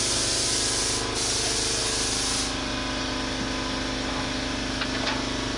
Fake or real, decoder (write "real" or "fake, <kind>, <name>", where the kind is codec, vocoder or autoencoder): real